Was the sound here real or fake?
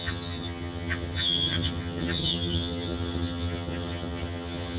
fake